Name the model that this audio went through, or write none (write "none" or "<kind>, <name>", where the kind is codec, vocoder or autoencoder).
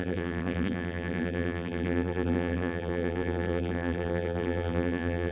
vocoder, BigVGAN v2